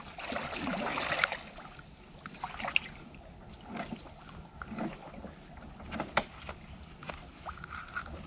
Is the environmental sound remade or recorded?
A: recorded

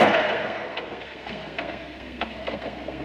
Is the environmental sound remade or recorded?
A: remade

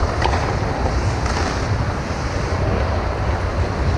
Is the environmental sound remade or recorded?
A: recorded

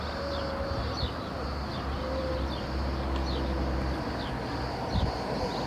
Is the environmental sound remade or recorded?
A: recorded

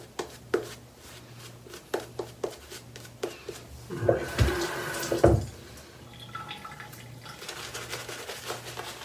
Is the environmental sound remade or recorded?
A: recorded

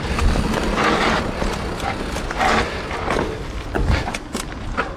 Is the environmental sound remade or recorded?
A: recorded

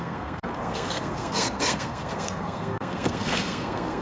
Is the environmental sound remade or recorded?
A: remade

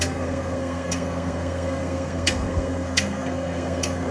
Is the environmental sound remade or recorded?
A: remade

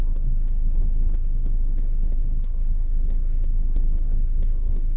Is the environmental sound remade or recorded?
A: remade